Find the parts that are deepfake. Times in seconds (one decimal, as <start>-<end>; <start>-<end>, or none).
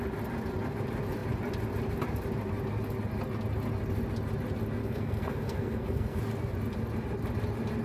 4.8-6.2